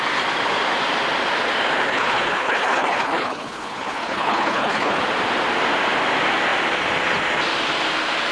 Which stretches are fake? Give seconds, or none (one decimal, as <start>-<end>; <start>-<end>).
1.9-5.0